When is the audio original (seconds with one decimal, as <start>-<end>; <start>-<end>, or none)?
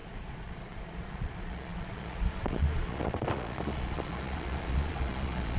none